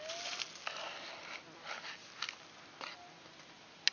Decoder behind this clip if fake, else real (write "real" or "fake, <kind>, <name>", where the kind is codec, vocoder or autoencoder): real